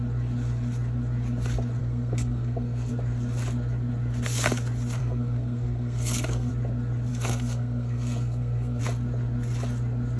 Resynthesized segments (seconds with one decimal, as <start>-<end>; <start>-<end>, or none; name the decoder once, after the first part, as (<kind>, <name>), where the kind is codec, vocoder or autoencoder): 1.8-2.9 (codec, SNAC); 5.0-6.5; 7.1-8.8